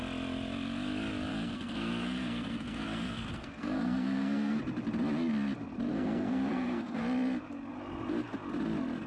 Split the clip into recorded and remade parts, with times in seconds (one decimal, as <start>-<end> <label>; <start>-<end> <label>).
0.0-1.3 recorded; 1.3-4.6 remade; 4.6-5.9 recorded; 5.9-7.0 remade; 7.0-9.1 recorded